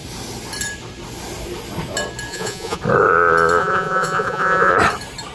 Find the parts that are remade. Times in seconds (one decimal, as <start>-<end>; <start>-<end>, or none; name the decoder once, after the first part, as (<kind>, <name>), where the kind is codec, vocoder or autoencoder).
2.3-2.8 (vocoder, Vocos); 3.6-4.7